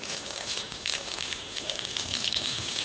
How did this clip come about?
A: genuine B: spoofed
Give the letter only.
B